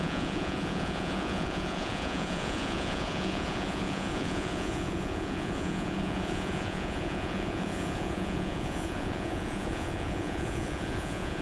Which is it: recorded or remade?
remade